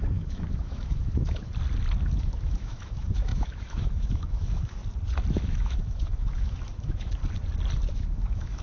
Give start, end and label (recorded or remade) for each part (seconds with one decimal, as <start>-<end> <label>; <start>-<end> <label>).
0.0-1.5 remade; 1.5-2.2 recorded; 2.2-4.8 remade; 4.8-5.3 recorded; 5.3-7.2 remade; 7.2-7.9 recorded; 7.9-8.6 remade